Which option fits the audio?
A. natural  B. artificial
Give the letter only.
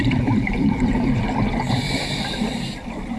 B